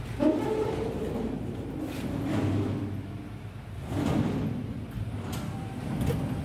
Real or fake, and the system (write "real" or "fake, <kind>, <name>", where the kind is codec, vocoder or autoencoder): real